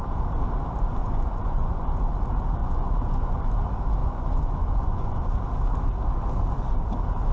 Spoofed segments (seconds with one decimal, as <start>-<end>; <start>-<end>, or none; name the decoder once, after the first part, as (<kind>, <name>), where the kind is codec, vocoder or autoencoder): 1.0-2.0 (vocoder, Vocos); 2.6-3.4; 4.0-5.3